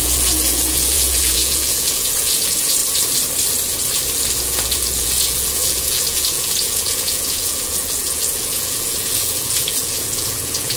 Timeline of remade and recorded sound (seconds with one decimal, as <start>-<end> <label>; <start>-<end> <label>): 0.0-2.8 remade; 2.8-4.4 recorded; 4.4-10.8 remade